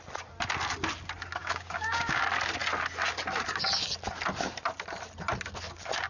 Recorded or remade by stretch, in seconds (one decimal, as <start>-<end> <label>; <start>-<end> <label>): 0.0-1.4 recorded; 1.4-2.2 remade; 2.2-6.1 recorded